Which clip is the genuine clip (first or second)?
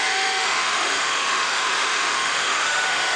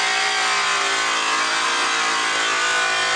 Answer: second